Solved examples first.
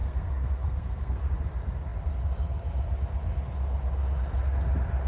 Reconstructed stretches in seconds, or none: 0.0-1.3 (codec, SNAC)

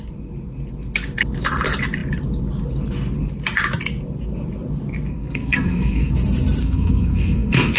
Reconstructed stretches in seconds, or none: 5.1-6.1 (codec, SNAC); 6.6-7.8